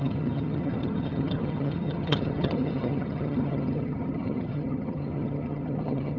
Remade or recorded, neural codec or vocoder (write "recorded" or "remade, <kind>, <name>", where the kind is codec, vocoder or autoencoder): remade, vocoder, HiFi-GAN